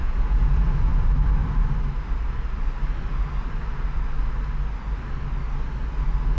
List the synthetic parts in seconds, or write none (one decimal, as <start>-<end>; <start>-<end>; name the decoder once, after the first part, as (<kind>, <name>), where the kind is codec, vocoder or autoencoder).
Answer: 0.0-0.9 (vocoder, Vocos)